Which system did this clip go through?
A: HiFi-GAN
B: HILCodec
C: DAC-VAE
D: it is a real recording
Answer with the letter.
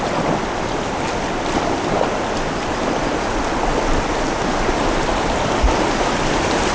D